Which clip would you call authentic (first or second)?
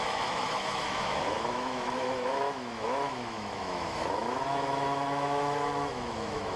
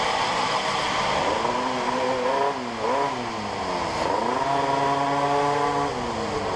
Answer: second